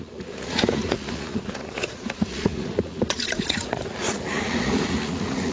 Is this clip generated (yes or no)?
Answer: yes